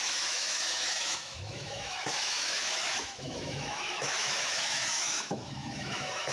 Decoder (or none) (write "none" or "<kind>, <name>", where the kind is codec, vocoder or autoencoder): autoencoder, DAC-VAE